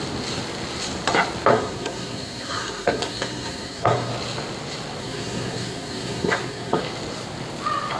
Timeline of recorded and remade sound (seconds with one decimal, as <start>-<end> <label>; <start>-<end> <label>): 0.0-1.5 recorded; 1.5-4.1 remade; 4.1-5.0 recorded; 5.0-6.8 remade; 6.8-8.0 recorded